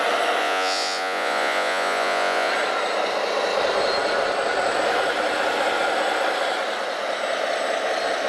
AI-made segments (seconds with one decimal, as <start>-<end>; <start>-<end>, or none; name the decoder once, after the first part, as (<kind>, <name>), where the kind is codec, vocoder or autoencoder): 0.4-2.5 (vocoder, Vocos)